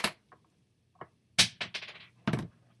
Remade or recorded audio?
recorded